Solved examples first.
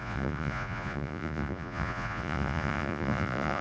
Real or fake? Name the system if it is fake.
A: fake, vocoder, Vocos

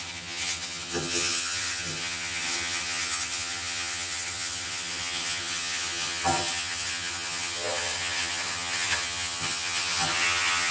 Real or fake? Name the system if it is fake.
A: fake, vocoder, HiFi-GAN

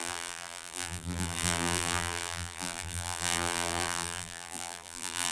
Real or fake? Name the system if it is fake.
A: fake, vocoder, BigVGAN v2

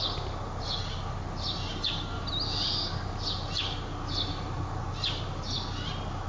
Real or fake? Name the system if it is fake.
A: real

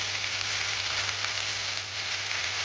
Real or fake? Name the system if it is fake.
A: real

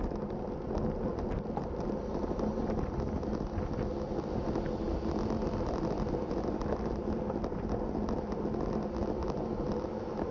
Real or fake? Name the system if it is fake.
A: real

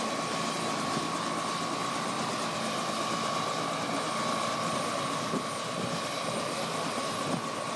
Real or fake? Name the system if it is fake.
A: real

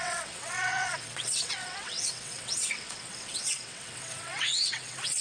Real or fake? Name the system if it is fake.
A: fake, vocoder, WaveNeXt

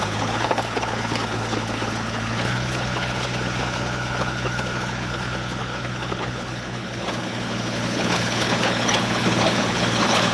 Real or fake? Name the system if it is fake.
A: fake, codec, HILCodec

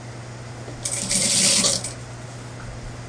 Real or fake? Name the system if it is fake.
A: real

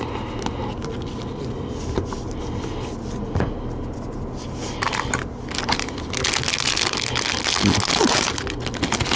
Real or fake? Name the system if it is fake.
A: real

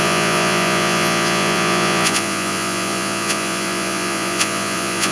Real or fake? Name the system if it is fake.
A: fake, vocoder, Vocos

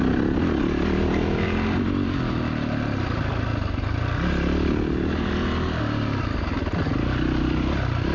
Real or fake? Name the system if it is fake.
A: real